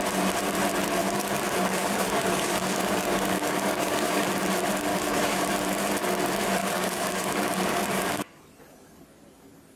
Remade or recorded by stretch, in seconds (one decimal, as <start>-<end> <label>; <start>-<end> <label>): 0.0-1.0 recorded; 1.0-4.3 remade; 4.3-4.9 recorded; 4.9-5.5 remade; 5.5-6.6 recorded; 6.6-8.4 remade; 8.4-9.8 recorded